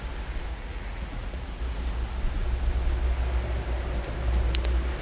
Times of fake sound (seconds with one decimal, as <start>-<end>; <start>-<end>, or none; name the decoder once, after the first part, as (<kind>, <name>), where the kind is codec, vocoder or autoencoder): 0.5-1.6 (vocoder, Vocos)